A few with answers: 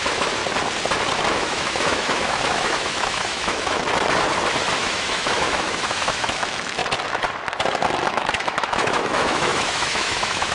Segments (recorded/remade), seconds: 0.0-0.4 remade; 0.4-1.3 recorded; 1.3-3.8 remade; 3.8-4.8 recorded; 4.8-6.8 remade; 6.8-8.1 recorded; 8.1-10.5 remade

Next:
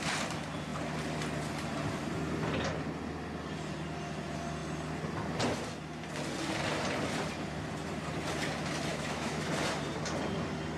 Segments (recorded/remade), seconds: 0.0-8.9 recorded; 8.9-9.5 remade; 9.5-10.8 recorded

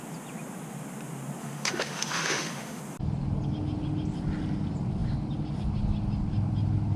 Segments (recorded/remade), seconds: 0.0-1.4 recorded; 1.4-2.8 remade; 2.8-7.0 recorded